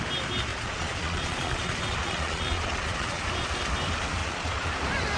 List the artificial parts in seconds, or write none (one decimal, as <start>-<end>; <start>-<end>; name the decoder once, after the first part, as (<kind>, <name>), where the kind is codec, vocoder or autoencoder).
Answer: 0.5-3.2 (vocoder, Vocos); 4.2-4.7